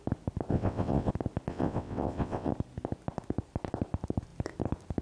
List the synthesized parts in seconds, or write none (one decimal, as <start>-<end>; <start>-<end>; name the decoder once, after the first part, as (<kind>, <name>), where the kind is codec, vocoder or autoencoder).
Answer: 0.5-1.1 (vocoder, WaveNeXt); 1.5-2.5